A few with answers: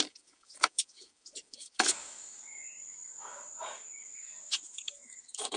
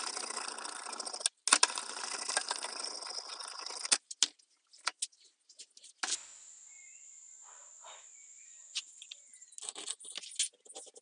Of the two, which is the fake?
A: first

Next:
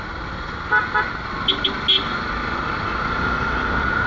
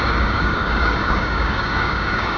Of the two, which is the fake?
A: second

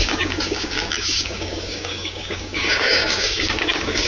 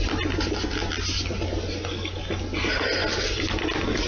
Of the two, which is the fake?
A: first